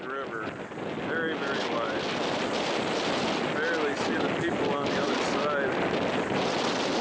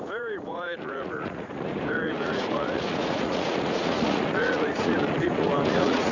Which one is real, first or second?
first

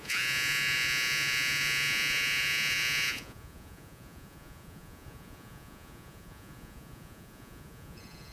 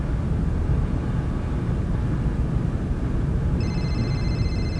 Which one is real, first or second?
second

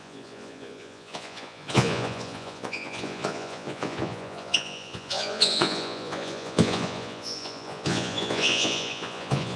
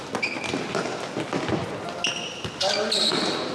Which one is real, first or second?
second